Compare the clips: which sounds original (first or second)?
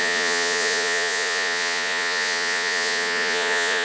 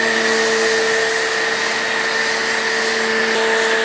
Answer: second